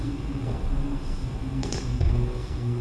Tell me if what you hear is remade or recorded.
remade